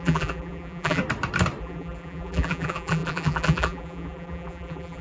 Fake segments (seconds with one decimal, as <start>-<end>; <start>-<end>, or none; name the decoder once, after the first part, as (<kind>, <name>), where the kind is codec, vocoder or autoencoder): 0.0-1.0 (vocoder, BigVGAN v2); 1.6-5.0